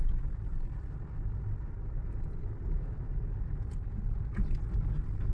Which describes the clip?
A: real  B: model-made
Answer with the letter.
A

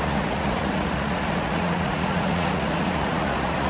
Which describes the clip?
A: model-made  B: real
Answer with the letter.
A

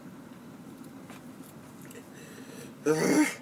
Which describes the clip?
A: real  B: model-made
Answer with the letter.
A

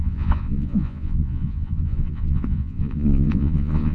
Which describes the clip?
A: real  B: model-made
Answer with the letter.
B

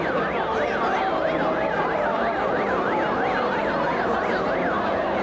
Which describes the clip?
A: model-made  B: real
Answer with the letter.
B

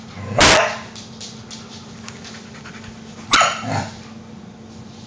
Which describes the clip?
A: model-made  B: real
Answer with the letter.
B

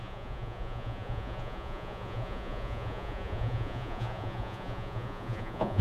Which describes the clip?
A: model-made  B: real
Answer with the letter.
A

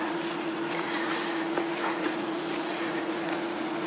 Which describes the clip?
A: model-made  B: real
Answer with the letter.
A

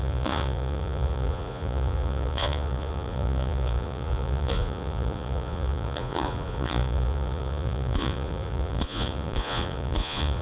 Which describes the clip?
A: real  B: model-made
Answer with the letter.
B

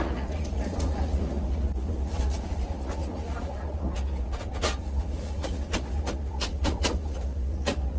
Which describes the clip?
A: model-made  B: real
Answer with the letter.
A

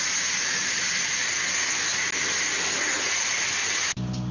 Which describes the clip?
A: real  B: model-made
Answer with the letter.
A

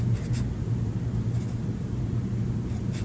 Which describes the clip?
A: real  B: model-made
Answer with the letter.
A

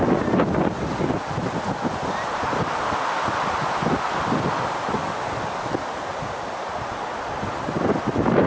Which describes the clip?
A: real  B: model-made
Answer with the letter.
A